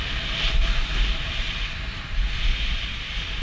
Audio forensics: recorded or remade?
recorded